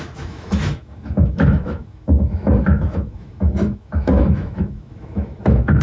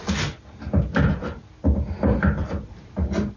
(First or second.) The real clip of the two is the second